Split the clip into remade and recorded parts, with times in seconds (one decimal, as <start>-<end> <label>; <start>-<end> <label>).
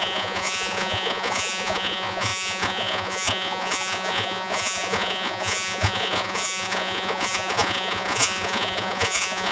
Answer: 0.0-9.5 remade